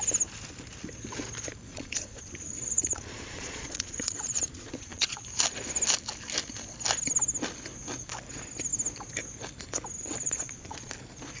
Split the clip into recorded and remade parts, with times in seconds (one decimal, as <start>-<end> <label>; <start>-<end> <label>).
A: 0.0-1.7 recorded; 1.7-5.2 remade; 5.2-10.0 recorded; 10.0-10.9 remade; 10.9-11.4 recorded